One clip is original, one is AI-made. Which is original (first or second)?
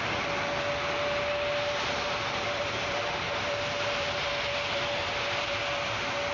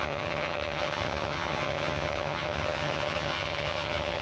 first